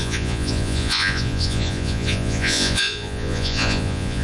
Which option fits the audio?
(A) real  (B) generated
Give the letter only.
B